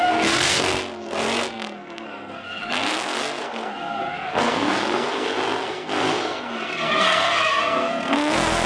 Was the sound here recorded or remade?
remade